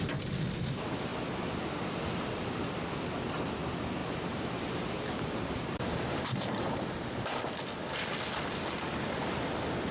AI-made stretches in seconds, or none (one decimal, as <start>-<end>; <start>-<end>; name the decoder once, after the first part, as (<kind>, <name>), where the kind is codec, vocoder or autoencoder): 4.0-7.6 (vocoder, BigVGAN v2)

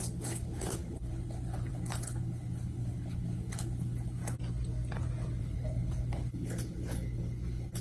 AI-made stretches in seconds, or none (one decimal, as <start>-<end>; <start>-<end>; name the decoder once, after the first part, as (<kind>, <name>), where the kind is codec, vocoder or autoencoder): 0.0-4.2 (codec, HILCodec); 5.4-7.8

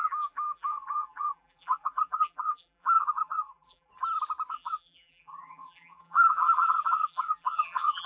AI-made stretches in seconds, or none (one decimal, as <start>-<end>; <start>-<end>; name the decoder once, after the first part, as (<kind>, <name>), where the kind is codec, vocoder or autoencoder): 0.0-3.9 (vocoder, BigVGAN v2); 4.5-8.1

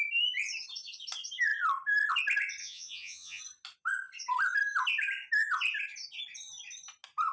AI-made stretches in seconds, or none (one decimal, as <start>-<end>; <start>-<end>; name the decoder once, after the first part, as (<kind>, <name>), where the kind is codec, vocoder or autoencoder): 2.6-3.4 (vocoder, Vocos)